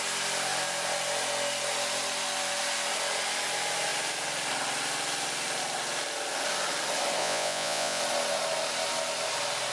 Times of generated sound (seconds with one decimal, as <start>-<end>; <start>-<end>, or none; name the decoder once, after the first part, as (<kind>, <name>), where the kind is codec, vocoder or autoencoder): 7.2-8.0 (vocoder, Vocos)